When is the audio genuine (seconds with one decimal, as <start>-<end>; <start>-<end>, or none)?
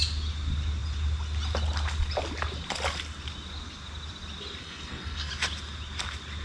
0.0-4.6; 5.3-6.4